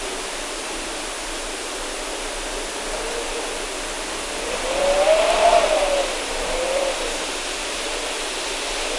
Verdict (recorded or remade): recorded